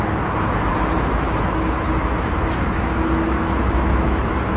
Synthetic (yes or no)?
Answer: yes